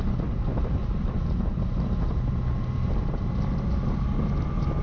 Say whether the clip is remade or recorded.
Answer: recorded